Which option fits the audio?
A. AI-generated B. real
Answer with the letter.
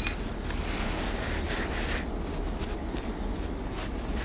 B